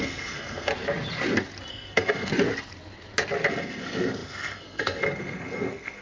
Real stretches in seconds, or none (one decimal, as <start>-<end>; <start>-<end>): 0.7-1.7; 2.3-3.5